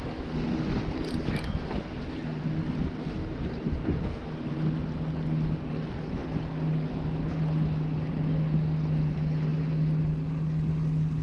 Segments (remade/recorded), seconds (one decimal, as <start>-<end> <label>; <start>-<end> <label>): 0.0-11.2 recorded